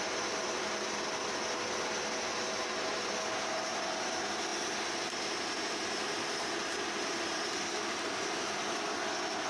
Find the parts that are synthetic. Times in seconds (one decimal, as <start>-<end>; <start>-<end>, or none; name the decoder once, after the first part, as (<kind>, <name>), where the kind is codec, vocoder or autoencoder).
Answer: none

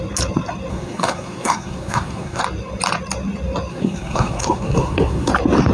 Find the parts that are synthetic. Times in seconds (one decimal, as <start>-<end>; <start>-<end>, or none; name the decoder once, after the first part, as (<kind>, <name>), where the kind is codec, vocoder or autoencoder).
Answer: 0.7-2.4 (codec, SNAC); 3.7-5.3